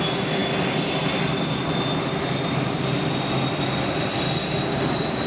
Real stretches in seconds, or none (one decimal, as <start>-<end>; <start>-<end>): 0.0-5.3